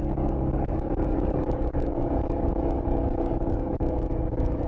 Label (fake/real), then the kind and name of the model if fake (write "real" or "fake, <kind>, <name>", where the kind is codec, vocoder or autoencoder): fake, codec, DAC